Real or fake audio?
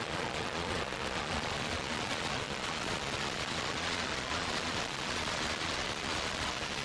fake